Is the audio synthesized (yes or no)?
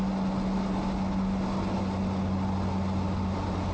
no